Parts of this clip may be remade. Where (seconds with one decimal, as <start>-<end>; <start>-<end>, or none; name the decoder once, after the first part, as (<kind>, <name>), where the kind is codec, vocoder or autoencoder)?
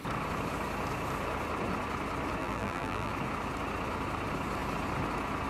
2.4-3.1 (vocoder, BigVGAN v2)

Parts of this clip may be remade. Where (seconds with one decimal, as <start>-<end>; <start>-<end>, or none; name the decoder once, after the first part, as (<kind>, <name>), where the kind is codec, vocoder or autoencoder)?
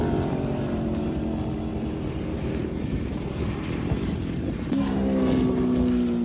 0.0-1.2 (vocoder, BigVGAN v2); 1.7-4.9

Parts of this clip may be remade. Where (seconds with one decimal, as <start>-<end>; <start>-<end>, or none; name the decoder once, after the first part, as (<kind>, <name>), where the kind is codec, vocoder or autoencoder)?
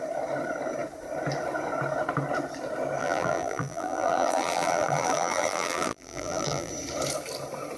3.0-6.7 (vocoder, BigVGAN v2)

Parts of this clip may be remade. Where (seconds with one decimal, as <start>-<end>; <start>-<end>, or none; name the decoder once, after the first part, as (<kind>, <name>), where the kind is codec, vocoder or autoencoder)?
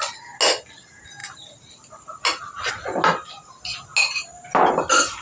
none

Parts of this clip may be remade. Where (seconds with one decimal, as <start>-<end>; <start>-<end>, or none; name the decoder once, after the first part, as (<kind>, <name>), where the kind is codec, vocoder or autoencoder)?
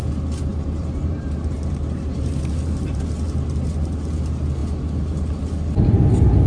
0.5-3.0 (vocoder, BigVGAN v2)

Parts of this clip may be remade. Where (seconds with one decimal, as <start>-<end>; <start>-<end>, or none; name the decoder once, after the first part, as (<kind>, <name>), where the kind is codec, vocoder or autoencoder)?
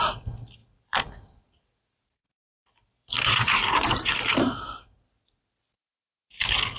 0.6-1.4 (vocoder, BigVGAN v2); 2.2-5.4